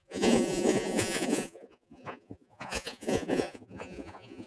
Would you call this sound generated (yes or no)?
yes